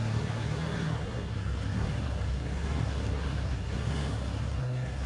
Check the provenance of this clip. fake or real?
fake